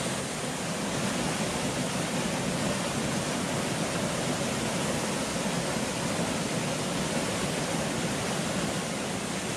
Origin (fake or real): real